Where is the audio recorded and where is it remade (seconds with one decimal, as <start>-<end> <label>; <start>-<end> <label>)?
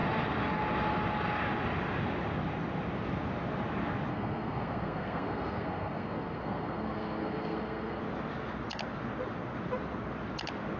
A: 0.0-4.1 recorded; 4.1-8.0 remade; 8.0-10.8 recorded